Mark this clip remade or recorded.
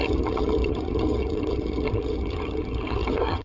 remade